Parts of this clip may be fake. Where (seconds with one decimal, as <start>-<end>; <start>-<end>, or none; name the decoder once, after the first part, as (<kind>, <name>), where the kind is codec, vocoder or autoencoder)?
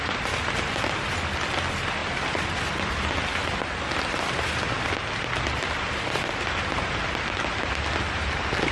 none